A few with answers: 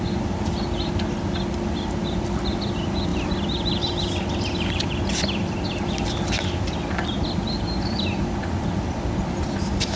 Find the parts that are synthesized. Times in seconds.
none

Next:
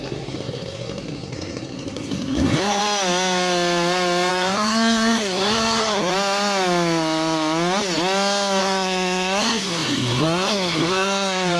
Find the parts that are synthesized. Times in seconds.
0.0-2.8 (codec, SNAC); 4.3-6.1; 8.6-11.6

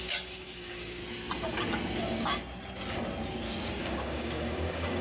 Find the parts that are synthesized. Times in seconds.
0.0-1.0 (codec, DAC); 3.8-5.0

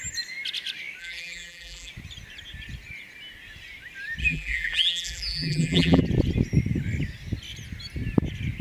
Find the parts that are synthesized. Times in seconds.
1.0-1.9 (vocoder, BigVGAN v2); 4.2-6.0

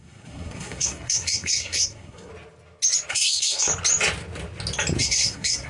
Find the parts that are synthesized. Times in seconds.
0.0-2.3 (codec, SNAC); 3.1-3.7; 5.0-5.7

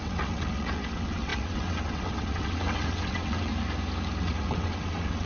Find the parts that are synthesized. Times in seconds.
0.0-3.5 (vocoder, WaveNeXt); 4.2-5.3